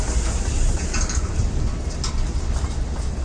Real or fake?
real